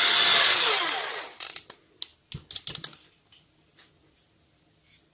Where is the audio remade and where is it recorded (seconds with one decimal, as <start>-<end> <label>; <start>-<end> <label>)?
0.0-5.1 recorded